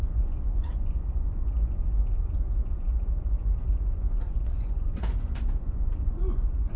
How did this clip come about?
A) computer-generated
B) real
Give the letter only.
A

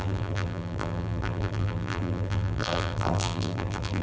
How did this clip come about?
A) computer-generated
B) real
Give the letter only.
A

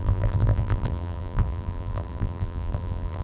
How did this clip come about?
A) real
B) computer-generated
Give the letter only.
B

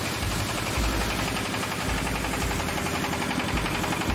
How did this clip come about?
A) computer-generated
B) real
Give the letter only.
B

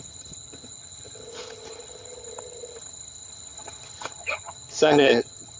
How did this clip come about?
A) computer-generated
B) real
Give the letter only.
A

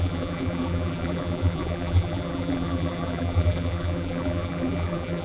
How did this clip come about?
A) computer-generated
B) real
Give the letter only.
A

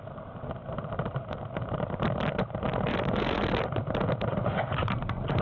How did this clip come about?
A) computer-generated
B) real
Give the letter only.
A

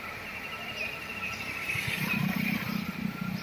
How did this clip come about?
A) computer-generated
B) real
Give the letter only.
B